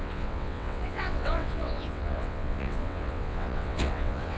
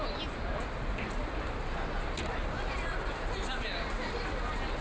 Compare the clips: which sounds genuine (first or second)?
second